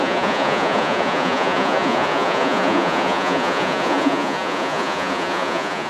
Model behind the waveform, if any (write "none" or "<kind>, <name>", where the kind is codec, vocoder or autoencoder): vocoder, Vocos